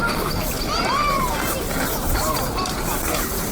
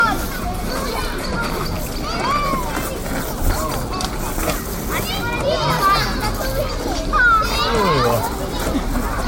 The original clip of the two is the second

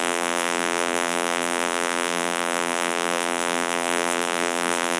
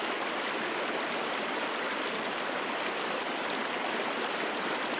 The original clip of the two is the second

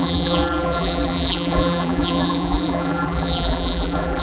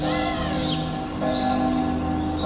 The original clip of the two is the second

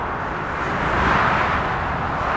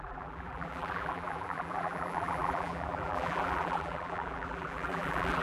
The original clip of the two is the first